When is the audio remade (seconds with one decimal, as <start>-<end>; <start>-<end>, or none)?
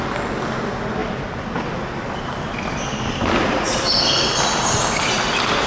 none